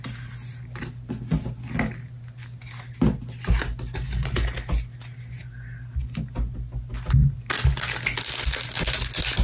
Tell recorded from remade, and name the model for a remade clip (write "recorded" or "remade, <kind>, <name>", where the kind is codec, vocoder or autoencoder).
recorded